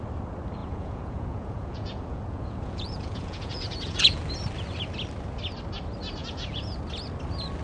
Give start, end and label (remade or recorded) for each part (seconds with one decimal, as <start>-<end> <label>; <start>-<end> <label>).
0.0-0.6 recorded; 0.6-4.2 remade; 4.2-6.2 recorded; 6.2-6.8 remade; 6.8-7.6 recorded